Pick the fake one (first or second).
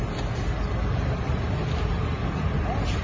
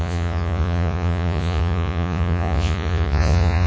second